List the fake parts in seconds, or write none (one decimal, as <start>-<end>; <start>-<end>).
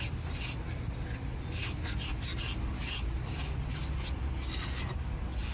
none